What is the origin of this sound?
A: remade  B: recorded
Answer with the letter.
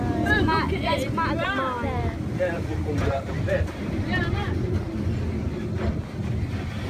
B